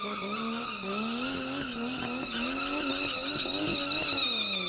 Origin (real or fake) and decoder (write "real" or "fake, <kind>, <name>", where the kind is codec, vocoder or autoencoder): real